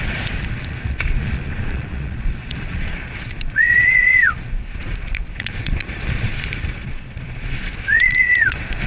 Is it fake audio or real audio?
fake